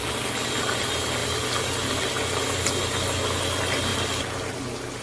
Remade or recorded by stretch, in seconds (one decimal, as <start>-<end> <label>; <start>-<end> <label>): 0.0-0.5 remade; 0.5-5.0 recorded